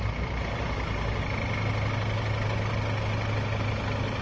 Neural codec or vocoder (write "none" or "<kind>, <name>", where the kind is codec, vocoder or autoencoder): none